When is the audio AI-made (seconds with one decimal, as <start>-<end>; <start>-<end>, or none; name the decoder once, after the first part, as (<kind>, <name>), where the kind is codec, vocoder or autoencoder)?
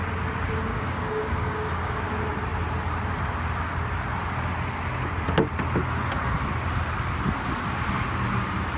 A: 0.7-2.0 (codec, DAC)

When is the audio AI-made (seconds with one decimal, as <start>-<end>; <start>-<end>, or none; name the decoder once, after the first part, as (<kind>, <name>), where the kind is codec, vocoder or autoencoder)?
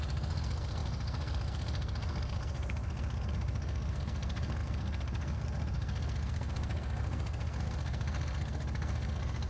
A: 0.0-9.5 (codec, SNAC)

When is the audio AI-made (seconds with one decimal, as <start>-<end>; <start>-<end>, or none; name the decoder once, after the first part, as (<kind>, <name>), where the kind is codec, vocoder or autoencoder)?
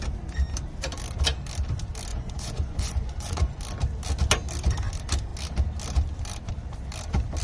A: 2.1-3.6 (vocoder, Vocos)